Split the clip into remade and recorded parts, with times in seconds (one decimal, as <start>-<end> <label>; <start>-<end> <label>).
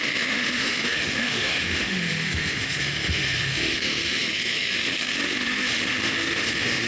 0.0-6.9 remade